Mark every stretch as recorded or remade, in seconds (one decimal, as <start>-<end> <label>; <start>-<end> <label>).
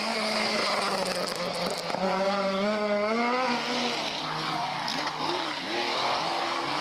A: 0.0-0.6 remade; 0.6-2.1 recorded; 2.1-3.2 remade; 3.2-4.2 recorded; 4.2-6.8 remade